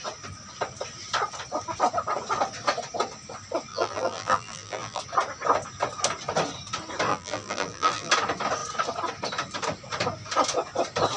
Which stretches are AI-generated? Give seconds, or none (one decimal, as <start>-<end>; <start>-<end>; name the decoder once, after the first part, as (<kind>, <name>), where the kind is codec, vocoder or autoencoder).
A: 3.7-5.0 (vocoder, BigVGAN v2); 7.1-8.1

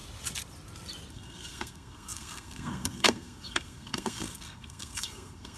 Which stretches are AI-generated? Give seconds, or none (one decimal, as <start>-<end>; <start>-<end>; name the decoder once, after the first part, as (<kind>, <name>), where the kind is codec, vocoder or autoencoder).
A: 1.1-5.6 (codec, SNAC)

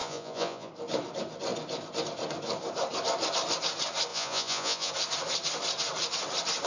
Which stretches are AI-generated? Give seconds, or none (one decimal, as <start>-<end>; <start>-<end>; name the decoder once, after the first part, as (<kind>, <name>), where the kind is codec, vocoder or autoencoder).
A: 0.0-0.7 (vocoder, Vocos); 4.1-4.9

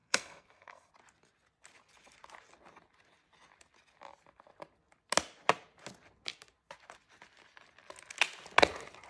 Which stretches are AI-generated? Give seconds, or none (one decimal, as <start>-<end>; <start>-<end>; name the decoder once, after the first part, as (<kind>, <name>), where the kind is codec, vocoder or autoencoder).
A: 0.0-0.9 (codec, SNAC)